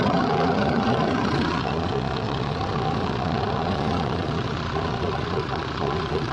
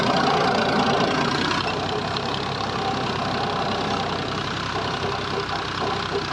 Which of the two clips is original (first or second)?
second